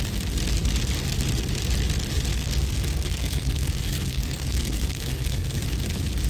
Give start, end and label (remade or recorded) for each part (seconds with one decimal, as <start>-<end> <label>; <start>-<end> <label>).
0.0-2.3 recorded; 2.3-5.6 remade; 5.6-6.3 recorded